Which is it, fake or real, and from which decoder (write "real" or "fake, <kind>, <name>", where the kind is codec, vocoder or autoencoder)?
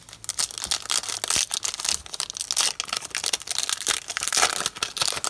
real